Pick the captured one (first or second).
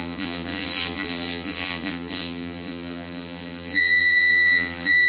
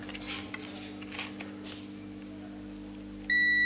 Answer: second